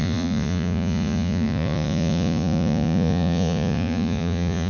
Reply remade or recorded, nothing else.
remade